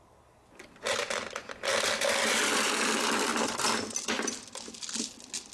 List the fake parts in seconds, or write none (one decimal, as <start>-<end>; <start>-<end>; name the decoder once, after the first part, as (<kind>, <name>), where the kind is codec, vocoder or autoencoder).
none